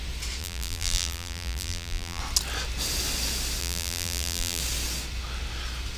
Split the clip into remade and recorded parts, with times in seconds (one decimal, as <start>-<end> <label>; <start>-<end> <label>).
0.0-0.4 recorded; 0.4-2.2 remade; 2.2-3.6 recorded; 3.6-4.6 remade; 4.6-6.0 recorded